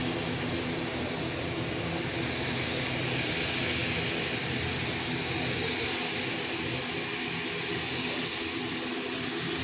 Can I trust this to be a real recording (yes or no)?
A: yes